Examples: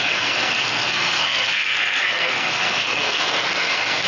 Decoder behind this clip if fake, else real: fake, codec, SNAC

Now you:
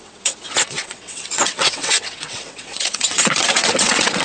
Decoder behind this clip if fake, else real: fake, vocoder, WaveNeXt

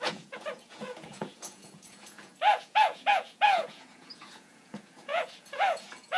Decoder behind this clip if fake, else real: fake, vocoder, Vocos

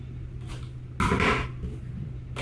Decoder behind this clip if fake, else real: real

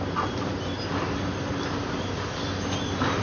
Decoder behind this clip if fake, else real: real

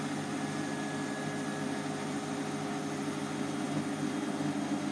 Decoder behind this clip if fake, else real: real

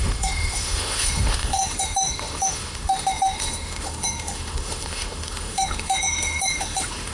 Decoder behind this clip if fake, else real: fake, autoencoder, DAC-VAE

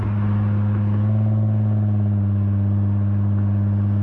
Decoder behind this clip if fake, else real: real